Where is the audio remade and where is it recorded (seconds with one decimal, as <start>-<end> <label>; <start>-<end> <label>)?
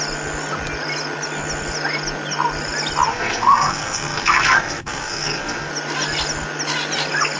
0.0-3.1 recorded; 3.1-5.7 remade; 5.7-7.4 recorded